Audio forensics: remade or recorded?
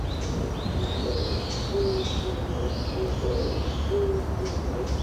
recorded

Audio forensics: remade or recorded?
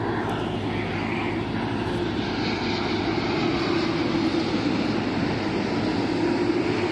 recorded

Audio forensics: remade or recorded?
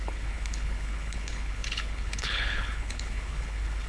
remade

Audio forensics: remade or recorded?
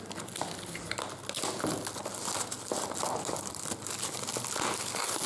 recorded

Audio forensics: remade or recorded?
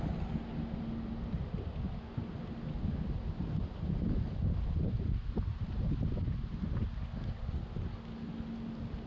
recorded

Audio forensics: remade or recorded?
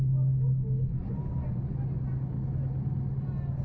recorded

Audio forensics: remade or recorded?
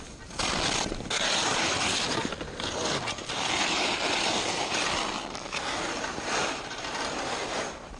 recorded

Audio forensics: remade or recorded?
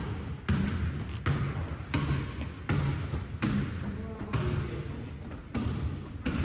recorded